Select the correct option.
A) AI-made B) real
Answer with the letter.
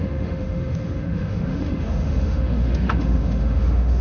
A